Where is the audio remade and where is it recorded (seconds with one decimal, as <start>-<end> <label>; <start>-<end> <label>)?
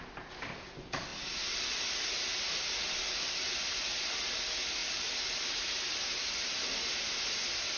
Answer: 0.0-7.8 recorded